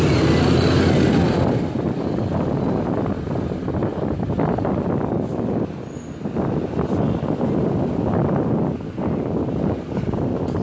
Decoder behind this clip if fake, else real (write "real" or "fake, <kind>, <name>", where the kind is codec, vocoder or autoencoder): real